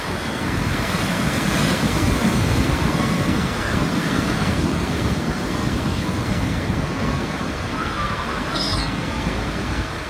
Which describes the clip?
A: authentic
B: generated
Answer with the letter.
B